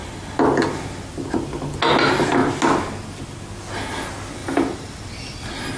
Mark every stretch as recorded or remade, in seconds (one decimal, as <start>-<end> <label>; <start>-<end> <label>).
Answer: 0.0-0.5 remade; 0.5-4.4 recorded; 4.4-5.1 remade; 5.1-5.8 recorded